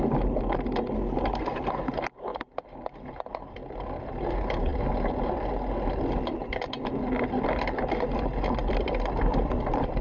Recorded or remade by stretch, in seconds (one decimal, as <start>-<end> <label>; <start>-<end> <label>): 0.0-2.3 recorded; 2.3-3.0 remade; 3.0-8.6 recorded; 8.6-10.0 remade